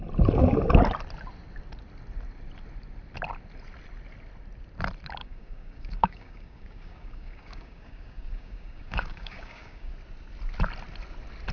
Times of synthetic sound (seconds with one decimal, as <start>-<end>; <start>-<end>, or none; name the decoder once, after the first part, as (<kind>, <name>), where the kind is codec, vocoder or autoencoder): 5.2-9.9 (codec, DAC)